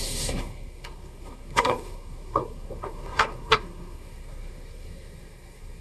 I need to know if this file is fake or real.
fake